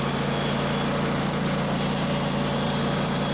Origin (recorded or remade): recorded